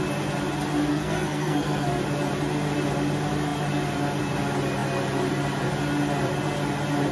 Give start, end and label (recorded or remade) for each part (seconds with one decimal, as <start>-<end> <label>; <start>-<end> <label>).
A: 0.0-0.9 recorded; 0.9-2.0 remade; 2.0-7.1 recorded